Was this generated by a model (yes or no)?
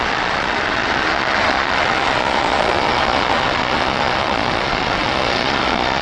yes